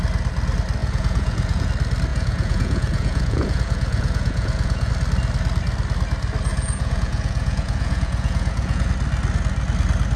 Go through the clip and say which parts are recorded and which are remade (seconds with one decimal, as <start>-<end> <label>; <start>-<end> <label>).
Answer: 0.0-0.8 recorded; 0.8-1.7 remade; 1.7-2.1 recorded; 2.1-4.9 remade; 4.9-6.5 recorded; 6.5-8.9 remade; 8.9-10.2 recorded

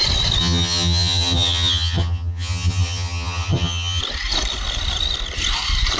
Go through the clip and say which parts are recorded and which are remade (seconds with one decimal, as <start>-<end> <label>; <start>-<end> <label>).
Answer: 0.0-0.4 recorded; 0.4-4.0 remade; 4.0-6.0 recorded